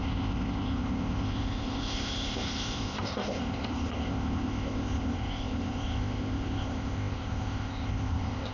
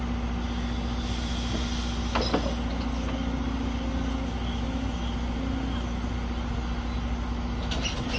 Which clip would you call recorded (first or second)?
second